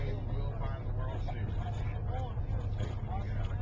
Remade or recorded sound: recorded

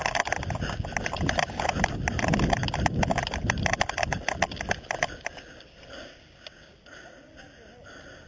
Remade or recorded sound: recorded